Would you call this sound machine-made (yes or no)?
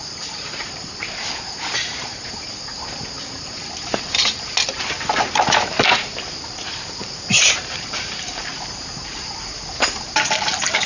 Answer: yes